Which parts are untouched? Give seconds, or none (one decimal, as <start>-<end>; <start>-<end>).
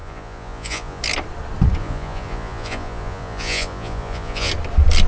1.0-1.8; 4.5-5.1